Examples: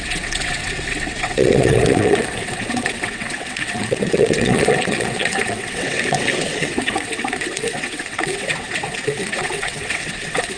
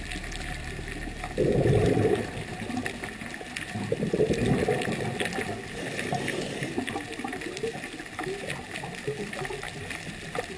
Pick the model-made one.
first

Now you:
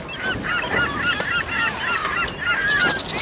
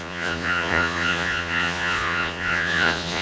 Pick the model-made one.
second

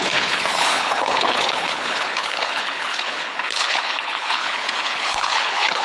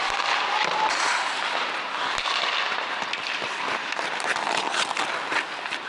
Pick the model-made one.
first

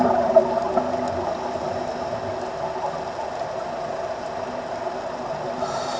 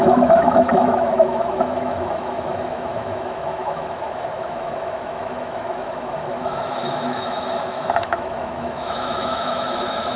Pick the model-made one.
second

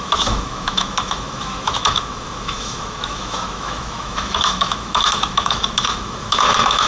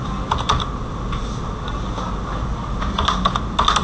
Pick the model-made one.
first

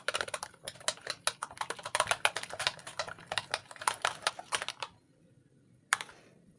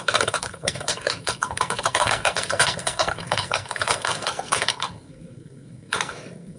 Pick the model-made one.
second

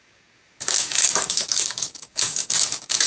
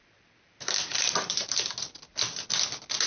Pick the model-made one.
first